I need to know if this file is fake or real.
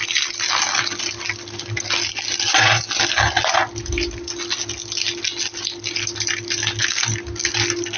real